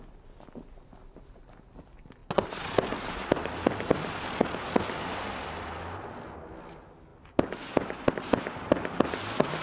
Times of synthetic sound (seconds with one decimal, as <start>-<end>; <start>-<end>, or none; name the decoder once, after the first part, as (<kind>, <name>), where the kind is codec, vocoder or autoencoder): none